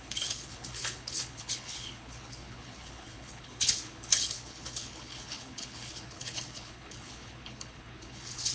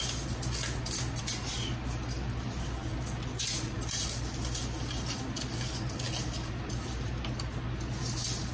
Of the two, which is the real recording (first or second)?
second